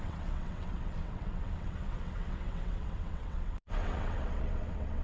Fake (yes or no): yes